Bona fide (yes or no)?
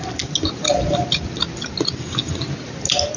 yes